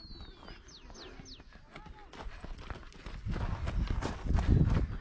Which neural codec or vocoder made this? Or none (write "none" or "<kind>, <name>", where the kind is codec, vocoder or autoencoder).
none